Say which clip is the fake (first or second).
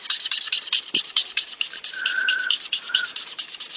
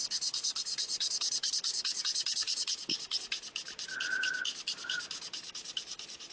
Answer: first